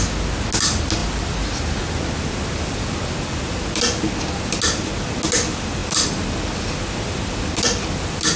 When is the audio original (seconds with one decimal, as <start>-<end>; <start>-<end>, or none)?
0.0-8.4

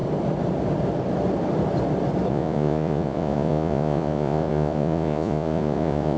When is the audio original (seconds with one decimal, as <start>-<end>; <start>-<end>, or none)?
0.0-2.3

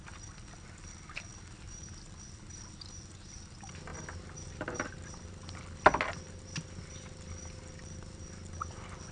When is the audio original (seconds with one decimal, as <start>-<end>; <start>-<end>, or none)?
0.0-9.1